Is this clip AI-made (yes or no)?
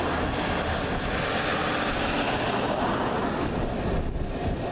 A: no